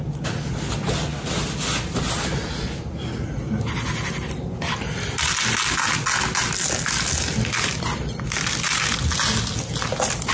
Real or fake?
real